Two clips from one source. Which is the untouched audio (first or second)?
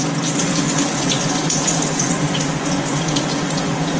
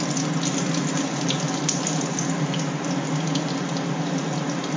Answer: second